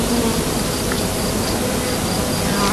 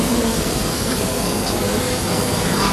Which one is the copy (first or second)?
second